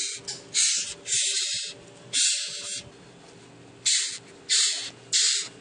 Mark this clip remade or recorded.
recorded